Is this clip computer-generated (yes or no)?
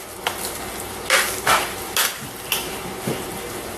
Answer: no